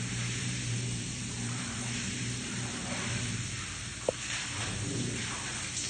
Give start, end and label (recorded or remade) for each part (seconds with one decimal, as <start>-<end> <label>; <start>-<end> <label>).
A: 0.0-0.4 recorded; 0.4-3.3 remade; 3.3-5.9 recorded